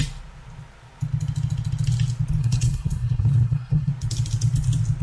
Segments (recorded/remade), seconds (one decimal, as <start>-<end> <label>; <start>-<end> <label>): 0.0-2.4 recorded; 2.4-3.9 remade; 3.9-5.0 recorded